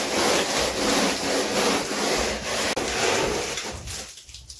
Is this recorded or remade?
recorded